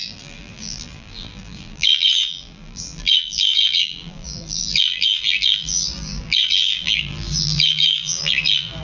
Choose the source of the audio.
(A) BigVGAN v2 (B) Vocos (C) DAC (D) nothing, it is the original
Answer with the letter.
A